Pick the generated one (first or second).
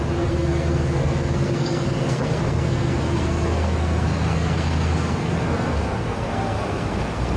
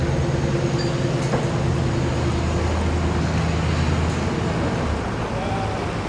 first